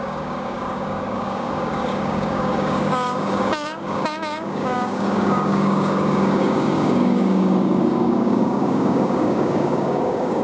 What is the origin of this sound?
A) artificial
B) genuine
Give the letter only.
A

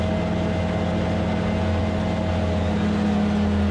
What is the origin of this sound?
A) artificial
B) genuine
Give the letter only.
B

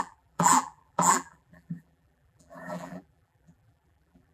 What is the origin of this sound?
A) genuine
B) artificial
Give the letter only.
B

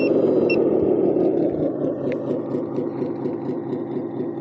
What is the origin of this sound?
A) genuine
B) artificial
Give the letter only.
A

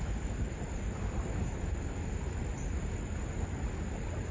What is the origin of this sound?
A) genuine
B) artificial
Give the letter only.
A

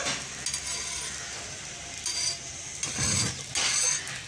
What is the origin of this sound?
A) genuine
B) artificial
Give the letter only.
A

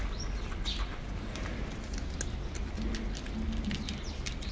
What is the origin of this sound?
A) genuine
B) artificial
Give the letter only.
A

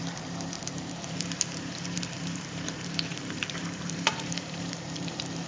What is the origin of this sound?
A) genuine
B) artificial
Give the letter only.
B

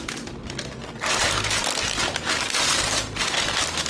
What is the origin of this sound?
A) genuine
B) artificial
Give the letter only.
A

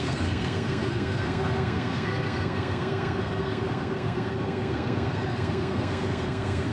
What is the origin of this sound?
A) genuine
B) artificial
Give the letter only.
B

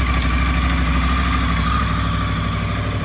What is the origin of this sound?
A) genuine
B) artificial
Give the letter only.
A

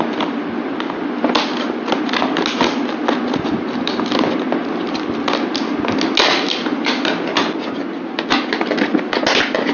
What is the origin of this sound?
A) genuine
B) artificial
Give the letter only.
A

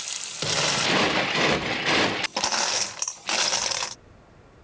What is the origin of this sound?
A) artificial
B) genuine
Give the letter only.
B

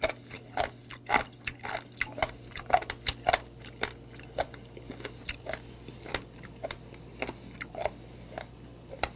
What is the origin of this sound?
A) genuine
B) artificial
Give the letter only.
A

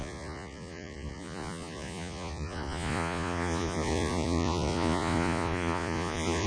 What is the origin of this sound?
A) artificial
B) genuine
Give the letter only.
A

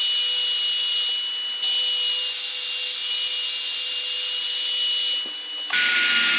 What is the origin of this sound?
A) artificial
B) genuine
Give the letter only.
B